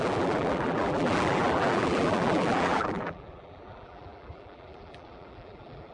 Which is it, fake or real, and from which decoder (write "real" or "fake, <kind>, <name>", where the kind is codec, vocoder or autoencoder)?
fake, vocoder, BigVGAN v2